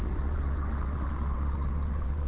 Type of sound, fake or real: fake